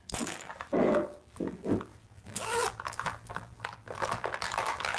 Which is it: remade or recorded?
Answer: remade